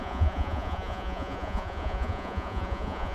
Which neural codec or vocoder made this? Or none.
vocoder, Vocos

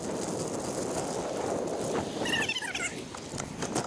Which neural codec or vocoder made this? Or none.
none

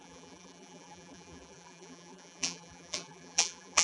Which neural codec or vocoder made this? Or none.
vocoder, BigVGAN v2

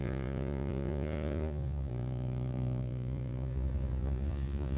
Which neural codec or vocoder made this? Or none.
vocoder, Vocos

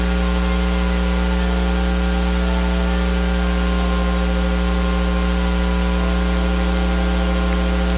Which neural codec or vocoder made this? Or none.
none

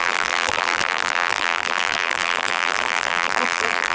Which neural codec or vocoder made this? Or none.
vocoder, BigVGAN v2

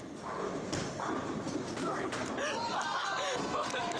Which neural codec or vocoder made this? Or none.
none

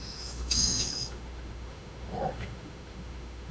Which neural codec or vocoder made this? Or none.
autoencoder, DAC-VAE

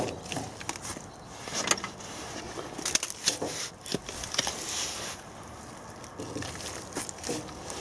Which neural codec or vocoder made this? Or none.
none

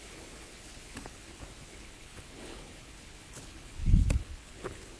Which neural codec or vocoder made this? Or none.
codec, HILCodec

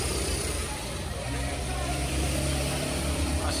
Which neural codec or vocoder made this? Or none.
vocoder, BigVGAN v2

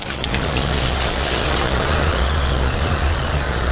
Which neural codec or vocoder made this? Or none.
vocoder, Vocos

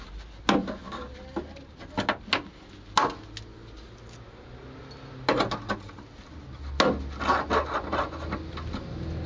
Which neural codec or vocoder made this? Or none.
none